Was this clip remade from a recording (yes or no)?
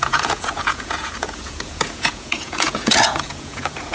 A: yes